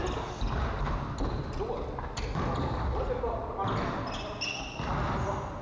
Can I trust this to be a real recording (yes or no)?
yes